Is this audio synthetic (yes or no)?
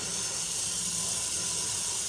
no